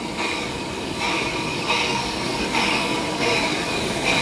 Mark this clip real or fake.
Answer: fake